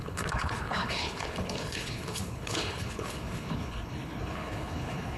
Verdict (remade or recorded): remade